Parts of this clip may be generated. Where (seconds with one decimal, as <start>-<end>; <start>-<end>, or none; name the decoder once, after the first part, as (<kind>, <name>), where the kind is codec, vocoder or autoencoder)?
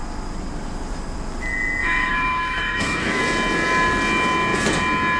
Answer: 1.8-3.2 (autoencoder, DAC-VAE)